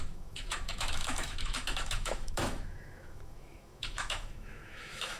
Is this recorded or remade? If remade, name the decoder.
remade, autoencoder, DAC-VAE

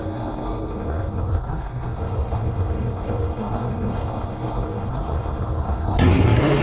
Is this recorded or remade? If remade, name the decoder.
remade, codec, SNAC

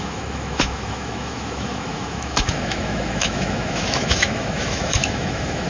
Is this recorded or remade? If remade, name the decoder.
remade, autoencoder, DAC-VAE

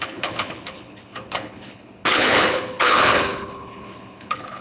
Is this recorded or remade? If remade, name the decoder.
remade, codec, HILCodec